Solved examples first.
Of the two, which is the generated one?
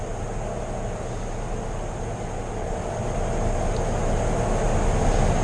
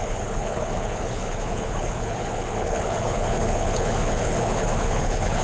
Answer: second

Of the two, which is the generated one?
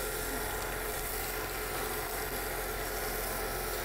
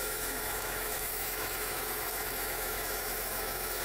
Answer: second